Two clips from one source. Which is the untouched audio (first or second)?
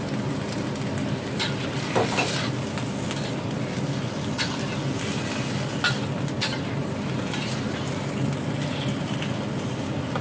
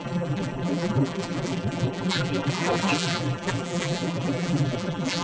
first